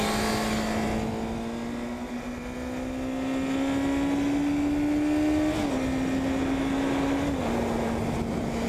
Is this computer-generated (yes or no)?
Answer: no